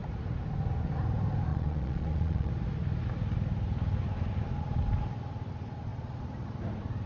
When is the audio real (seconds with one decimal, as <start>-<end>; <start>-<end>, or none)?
0.0-1.5; 2.5-7.1